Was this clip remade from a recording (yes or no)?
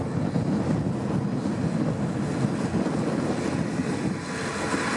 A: no